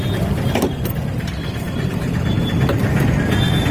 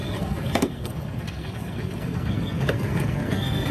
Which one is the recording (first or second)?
first